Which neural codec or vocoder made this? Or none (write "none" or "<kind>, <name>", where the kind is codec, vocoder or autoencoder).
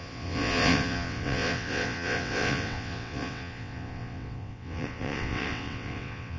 vocoder, WaveNeXt